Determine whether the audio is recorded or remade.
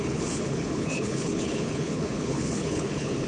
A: remade